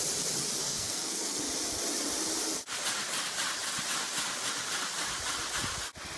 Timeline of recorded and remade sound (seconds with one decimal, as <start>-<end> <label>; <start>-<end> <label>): 0.0-0.6 recorded; 0.6-1.4 remade; 1.4-6.2 recorded